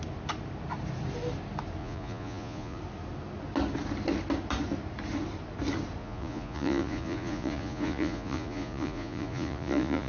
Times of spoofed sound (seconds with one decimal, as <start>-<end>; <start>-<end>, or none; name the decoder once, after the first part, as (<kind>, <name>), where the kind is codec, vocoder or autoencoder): 1.8-2.8 (vocoder, Vocos); 6.0-10.1